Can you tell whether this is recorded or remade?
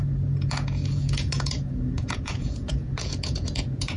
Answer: remade